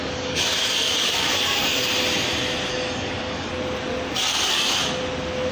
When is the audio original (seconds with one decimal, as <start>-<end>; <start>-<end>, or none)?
1.9-2.7; 3.5-4.1; 4.8-5.5